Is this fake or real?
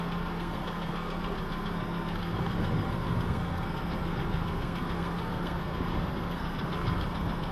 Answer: fake